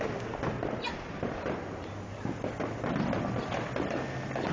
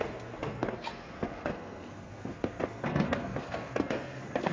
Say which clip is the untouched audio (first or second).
first